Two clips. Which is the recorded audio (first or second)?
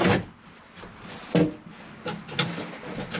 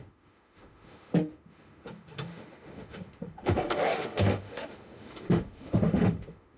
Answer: first